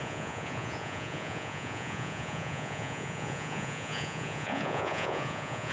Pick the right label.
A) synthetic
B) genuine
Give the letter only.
A